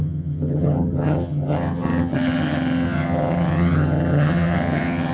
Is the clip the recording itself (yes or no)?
no